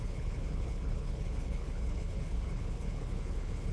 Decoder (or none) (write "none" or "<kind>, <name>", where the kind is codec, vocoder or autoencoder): codec, HILCodec